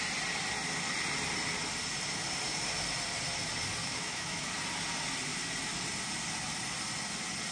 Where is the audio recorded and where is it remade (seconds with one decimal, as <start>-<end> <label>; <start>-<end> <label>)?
0.0-3.8 recorded; 3.8-4.5 remade; 4.5-7.5 recorded

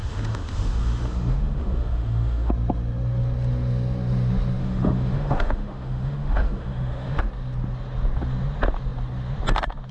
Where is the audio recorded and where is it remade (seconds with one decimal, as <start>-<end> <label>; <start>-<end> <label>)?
0.0-2.5 remade; 2.5-4.6 recorded; 4.6-7.2 remade; 7.2-9.9 recorded